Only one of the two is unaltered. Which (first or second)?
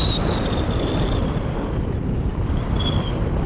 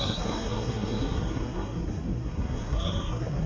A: first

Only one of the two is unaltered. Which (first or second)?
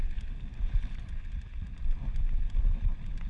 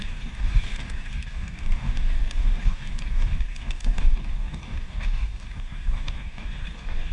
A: first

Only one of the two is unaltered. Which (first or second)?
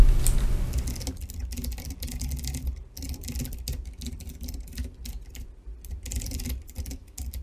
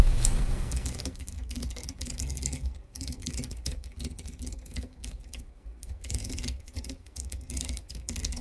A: first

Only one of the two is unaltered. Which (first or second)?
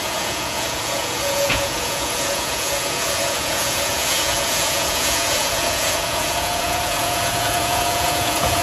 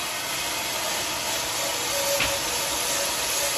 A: second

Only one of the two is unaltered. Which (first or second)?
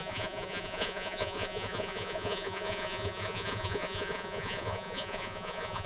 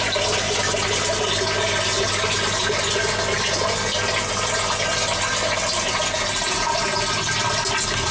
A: second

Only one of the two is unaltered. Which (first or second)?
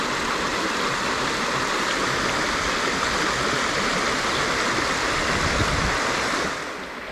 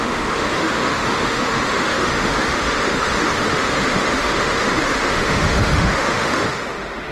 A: first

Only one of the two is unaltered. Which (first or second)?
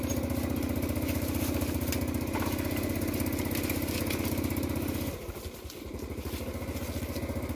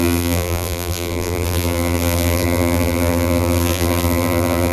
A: first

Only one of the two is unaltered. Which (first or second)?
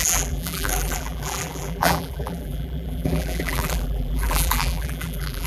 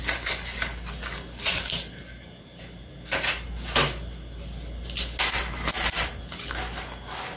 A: second